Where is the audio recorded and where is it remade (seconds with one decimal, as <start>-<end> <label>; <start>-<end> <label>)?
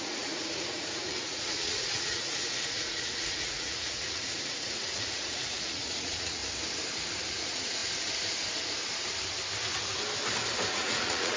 0.0-6.4 remade; 6.4-7.3 recorded; 7.3-7.8 remade; 7.8-10.7 recorded; 10.7-11.4 remade